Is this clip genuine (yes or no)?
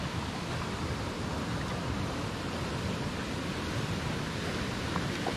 yes